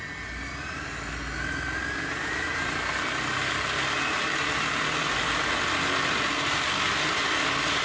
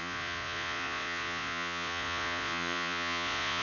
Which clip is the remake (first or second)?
second